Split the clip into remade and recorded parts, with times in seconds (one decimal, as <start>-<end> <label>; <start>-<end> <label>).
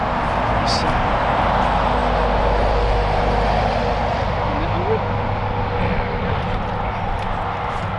0.0-8.0 recorded